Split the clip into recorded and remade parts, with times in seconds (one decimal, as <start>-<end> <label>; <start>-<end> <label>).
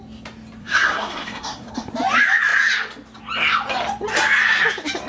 0.0-0.6 recorded; 0.6-1.9 remade; 1.9-5.1 recorded